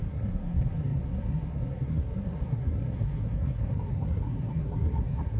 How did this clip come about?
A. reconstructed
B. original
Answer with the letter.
A